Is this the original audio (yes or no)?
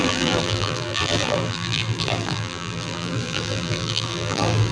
no